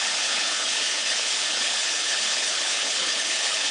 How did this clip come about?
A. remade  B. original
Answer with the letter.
A